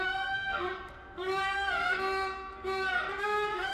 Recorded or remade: remade